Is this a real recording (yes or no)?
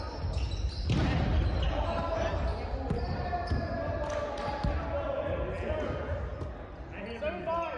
yes